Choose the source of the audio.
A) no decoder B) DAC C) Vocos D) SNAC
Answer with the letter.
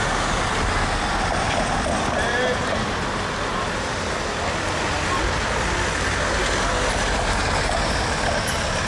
A